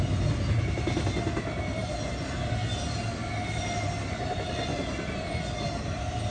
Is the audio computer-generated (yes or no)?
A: no